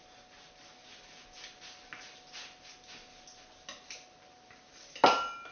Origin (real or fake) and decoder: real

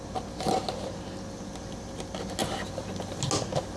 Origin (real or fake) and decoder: real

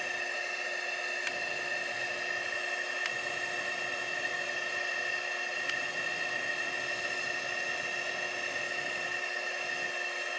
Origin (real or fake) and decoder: real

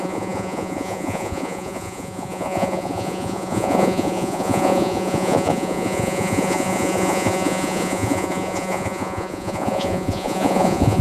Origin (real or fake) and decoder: fake, vocoder, Vocos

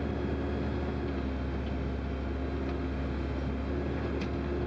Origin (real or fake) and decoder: real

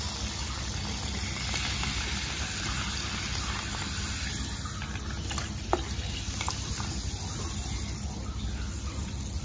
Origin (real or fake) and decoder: real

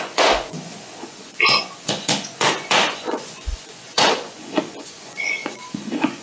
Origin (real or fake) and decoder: fake, vocoder, Vocos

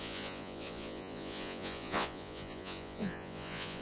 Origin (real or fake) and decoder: fake, vocoder, Vocos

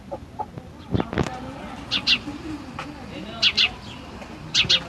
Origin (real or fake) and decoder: real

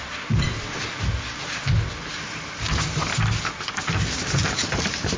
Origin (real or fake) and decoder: real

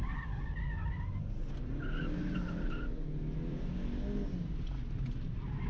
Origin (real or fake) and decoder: real